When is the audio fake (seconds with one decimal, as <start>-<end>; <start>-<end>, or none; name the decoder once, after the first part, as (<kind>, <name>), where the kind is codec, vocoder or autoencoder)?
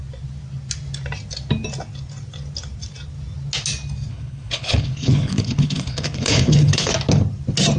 4.1-6.9 (codec, HILCodec)